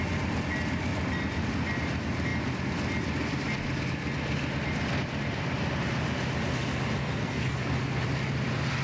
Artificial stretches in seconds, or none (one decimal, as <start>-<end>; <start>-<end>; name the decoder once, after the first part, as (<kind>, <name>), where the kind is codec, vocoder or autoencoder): 7.0-7.7 (codec, SNAC)